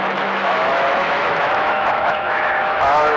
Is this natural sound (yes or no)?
no